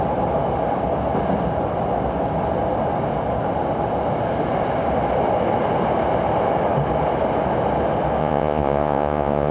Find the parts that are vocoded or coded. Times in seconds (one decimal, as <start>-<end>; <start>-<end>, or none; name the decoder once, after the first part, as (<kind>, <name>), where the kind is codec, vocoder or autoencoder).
8.2-9.5 (vocoder, Vocos)